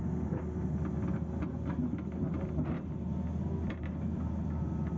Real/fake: real